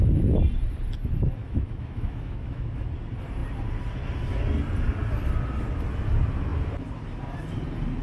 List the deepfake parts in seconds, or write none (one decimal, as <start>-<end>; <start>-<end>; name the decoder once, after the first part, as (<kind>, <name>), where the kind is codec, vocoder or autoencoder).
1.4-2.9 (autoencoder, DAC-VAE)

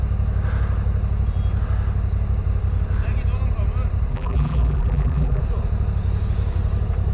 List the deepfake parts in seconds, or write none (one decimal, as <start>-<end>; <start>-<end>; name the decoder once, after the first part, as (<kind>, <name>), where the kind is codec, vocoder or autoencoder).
4.1-5.4 (vocoder, BigVGAN v2)

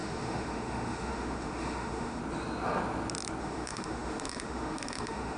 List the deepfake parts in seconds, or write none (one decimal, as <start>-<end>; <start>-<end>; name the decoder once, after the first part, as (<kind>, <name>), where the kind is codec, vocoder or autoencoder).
0.0-2.2 (autoencoder, DAC-VAE); 3.4-5.4

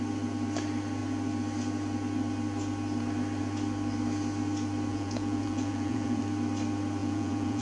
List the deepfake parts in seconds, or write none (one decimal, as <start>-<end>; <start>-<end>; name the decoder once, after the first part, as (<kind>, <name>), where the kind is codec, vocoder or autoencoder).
4.9-6.2 (vocoder, Vocos); 7.0-7.6